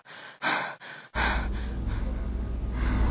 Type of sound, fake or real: real